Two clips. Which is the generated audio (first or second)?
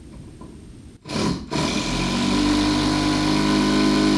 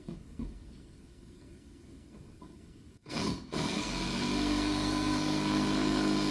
second